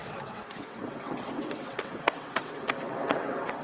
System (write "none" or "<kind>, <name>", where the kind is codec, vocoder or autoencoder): vocoder, WaveNeXt